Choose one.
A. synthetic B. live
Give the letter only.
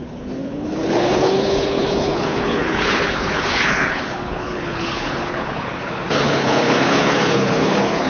A